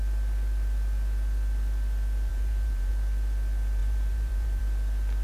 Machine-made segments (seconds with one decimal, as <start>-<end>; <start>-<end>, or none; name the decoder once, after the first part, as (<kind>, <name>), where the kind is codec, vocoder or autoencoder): 2.3-2.9 (vocoder, BigVGAN v2); 3.8-4.6